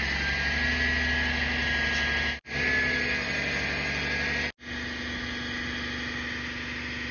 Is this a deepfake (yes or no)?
no